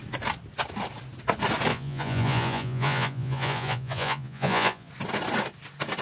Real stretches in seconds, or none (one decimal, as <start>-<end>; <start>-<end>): 0.0-1.7; 4.9-6.0